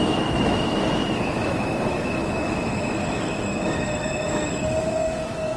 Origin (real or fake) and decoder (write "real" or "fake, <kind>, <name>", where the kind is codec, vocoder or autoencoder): fake, autoencoder, DAC-VAE